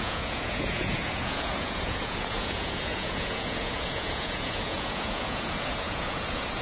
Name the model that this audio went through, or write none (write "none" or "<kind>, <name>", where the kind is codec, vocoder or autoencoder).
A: vocoder, Vocos